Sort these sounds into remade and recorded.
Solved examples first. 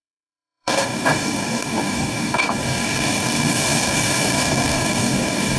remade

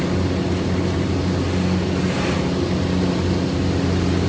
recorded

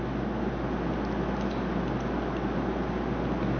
recorded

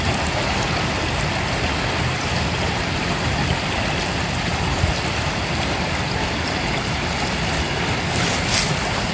recorded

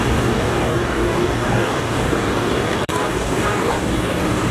remade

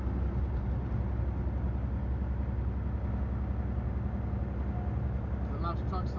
recorded